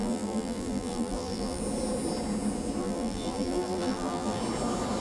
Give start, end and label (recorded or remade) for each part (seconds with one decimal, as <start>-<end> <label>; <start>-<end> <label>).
0.0-1.6 remade; 1.6-2.8 recorded; 2.8-4.4 remade; 4.4-5.0 recorded